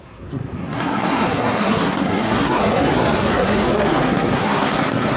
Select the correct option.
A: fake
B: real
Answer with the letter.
A